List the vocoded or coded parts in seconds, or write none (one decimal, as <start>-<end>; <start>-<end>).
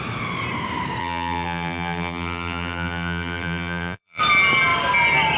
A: 1.0-4.2